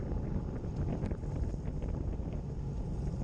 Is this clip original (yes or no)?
yes